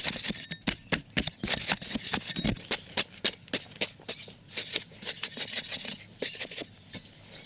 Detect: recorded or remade recorded